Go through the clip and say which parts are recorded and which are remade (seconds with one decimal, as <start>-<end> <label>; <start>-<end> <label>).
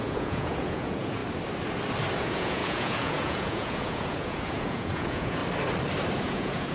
0.0-1.2 remade; 1.2-2.2 recorded; 2.2-5.4 remade; 5.4-6.2 recorded; 6.2-6.7 remade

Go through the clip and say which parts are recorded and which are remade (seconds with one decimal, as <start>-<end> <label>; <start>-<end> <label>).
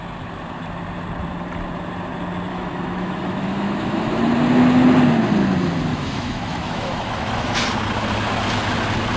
0.0-2.5 recorded; 2.5-4.2 remade; 4.2-5.9 recorded; 5.9-7.6 remade; 7.6-9.2 recorded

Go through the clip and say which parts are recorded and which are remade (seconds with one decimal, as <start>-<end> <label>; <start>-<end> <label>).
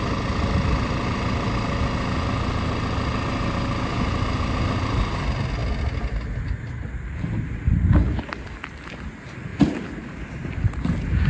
0.0-9.5 recorded; 9.5-10.5 remade; 10.5-11.3 recorded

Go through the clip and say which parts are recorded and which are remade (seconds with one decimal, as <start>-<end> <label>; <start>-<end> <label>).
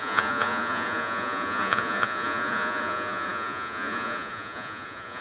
0.0-5.2 remade